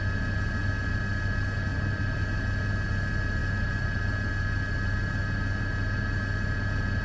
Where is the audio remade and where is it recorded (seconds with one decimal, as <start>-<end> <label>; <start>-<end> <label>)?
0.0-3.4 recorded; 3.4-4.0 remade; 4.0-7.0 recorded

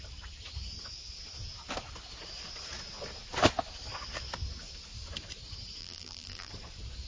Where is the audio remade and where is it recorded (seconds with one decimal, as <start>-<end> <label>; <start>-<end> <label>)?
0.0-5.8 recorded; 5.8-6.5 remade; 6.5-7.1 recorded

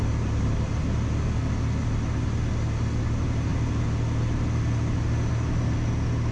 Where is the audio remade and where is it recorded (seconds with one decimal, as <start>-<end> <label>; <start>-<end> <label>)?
0.0-0.7 remade; 0.7-6.3 recorded